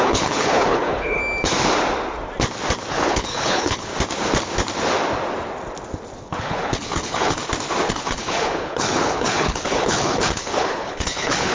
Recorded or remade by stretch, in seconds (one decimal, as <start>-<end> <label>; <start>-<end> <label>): 0.0-1.2 remade; 1.2-2.9 recorded; 2.9-3.9 remade; 3.9-6.2 recorded; 6.2-7.4 remade; 7.4-7.9 recorded; 7.9-11.5 remade